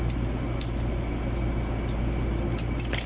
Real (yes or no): yes